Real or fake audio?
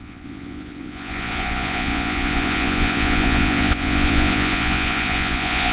fake